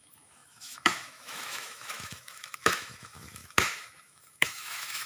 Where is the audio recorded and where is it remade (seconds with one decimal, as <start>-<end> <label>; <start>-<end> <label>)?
0.0-5.1 remade